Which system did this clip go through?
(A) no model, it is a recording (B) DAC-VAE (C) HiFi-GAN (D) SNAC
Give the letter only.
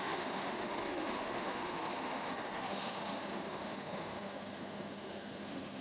B